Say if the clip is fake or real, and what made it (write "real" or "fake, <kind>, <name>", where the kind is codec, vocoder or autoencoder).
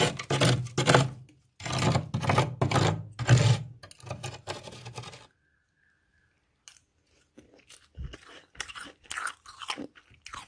real